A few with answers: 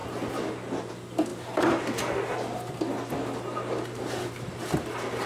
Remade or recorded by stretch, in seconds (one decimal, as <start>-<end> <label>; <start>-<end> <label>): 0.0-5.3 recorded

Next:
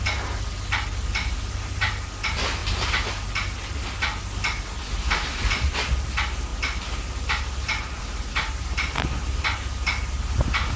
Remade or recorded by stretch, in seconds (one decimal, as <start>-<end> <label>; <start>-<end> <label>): 0.0-10.8 recorded

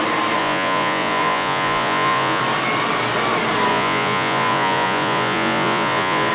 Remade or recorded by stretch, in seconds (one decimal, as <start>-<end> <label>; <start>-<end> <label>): 0.0-0.4 recorded; 0.4-2.4 remade; 2.4-3.7 recorded; 3.7-6.3 remade

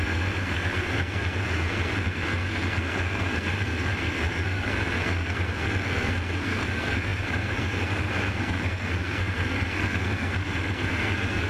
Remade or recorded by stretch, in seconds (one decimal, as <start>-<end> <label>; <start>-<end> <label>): 0.0-11.5 remade

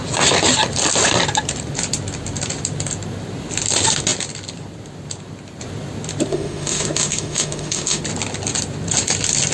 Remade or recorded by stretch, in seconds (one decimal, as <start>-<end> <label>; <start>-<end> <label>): 0.0-6.3 recorded; 6.3-8.0 remade; 8.0-9.5 recorded

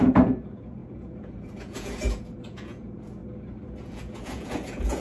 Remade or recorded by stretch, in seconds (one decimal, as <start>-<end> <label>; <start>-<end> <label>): 0.0-3.2 remade; 3.2-3.8 recorded; 3.8-5.0 remade

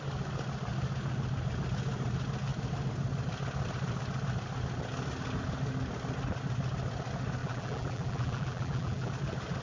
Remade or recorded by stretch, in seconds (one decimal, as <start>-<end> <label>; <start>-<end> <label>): 0.0-7.4 recorded; 7.4-9.1 remade; 9.1-9.6 recorded

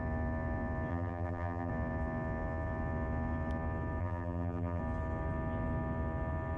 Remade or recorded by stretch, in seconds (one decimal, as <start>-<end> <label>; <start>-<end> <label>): 0.0-0.9 recorded; 0.9-1.7 remade; 1.7-4.0 recorded; 4.0-4.8 remade; 4.8-6.6 recorded